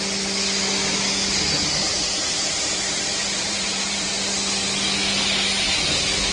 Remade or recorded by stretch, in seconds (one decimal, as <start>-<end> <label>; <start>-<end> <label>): 0.0-1.9 recorded; 1.9-4.1 remade; 4.1-6.3 recorded